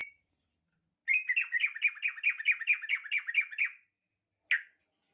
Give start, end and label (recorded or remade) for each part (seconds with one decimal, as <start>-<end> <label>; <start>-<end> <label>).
0.0-5.1 recorded